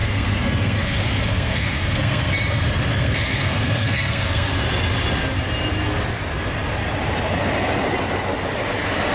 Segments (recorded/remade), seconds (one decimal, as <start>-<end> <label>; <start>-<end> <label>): 0.0-2.3 remade; 2.3-2.9 recorded; 2.9-4.5 remade; 4.5-9.1 recorded